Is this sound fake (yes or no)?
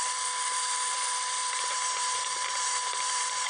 yes